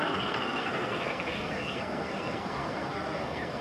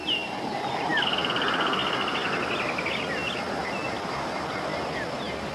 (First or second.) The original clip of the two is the second